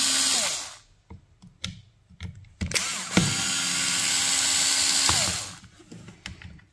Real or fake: real